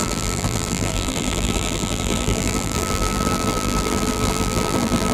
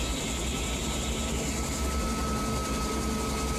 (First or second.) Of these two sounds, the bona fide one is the second